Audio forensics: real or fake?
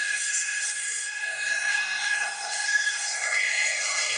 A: fake